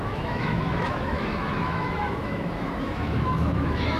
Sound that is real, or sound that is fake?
fake